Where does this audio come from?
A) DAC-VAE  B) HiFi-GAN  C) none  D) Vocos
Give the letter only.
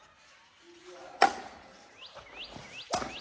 C